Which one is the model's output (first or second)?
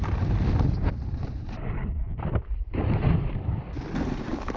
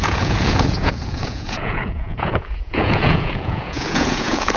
second